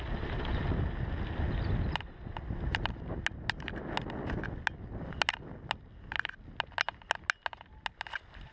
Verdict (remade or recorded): recorded